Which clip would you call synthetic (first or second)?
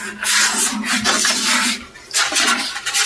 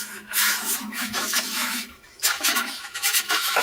second